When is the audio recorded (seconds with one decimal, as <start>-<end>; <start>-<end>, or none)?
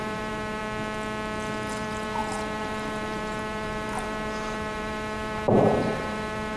0.6-1.7